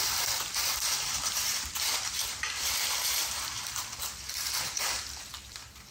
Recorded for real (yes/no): no